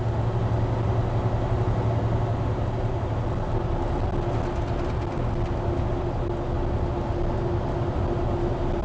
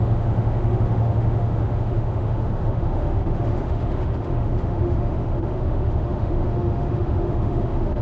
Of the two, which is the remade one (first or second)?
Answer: second